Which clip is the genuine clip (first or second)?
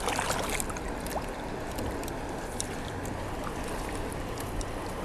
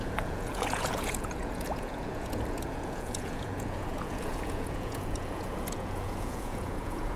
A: first